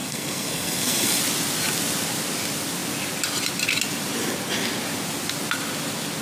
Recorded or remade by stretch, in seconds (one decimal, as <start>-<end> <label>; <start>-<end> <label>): 0.0-1.2 remade; 1.2-6.2 recorded